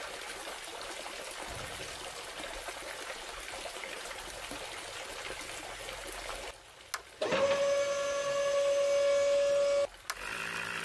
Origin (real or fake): real